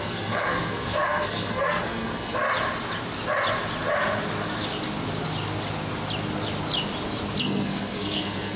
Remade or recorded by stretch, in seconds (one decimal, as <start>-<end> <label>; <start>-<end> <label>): 0.0-2.4 remade; 2.4-7.4 recorded; 7.4-8.6 remade

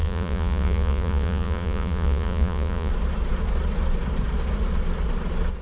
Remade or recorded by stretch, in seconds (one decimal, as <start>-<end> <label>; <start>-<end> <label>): 0.0-2.9 remade; 2.9-5.6 recorded

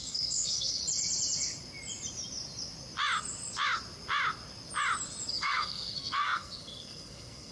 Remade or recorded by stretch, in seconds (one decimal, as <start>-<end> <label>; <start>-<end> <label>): 0.0-0.8 remade; 0.8-5.3 recorded; 5.3-7.5 remade